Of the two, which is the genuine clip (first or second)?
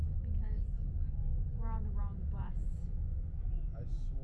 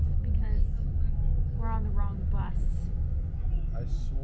second